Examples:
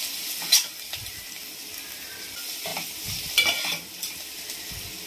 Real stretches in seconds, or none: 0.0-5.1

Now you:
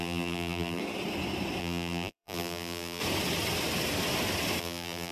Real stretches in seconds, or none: 0.8-1.6; 3.0-4.6

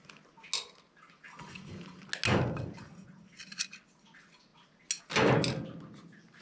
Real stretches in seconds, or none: 0.0-6.4

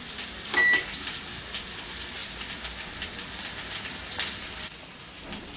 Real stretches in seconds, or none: 0.0-5.6

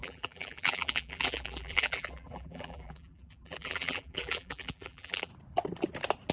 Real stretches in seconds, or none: 5.3-6.3